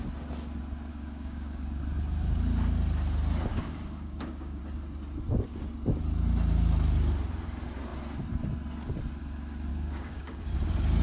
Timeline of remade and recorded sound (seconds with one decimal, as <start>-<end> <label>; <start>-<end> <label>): 0.0-0.9 recorded; 0.9-1.8 remade; 1.8-3.5 recorded; 3.5-4.6 remade; 4.6-9.7 recorded; 9.7-10.4 remade; 10.4-11.0 recorded